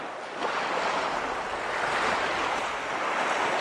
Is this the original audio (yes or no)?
yes